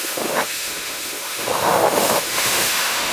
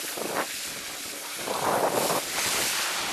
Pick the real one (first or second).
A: second